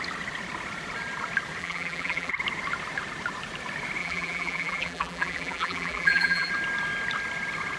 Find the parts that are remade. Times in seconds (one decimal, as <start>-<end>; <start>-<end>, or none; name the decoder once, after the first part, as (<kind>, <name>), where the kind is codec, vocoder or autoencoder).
1.6-2.3 (vocoder, BigVGAN v2); 4.0-6.5